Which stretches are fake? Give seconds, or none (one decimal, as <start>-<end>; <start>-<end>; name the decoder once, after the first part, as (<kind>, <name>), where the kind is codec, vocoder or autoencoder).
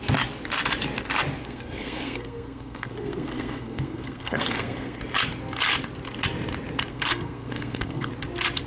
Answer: 1.4-5.0 (codec, SNAC); 6.9-8.1